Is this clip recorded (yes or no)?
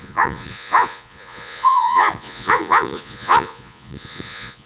no